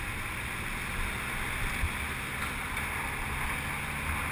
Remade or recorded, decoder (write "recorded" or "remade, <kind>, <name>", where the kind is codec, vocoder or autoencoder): recorded